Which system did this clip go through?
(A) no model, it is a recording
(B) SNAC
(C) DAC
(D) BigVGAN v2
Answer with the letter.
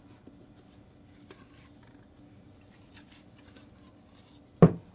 D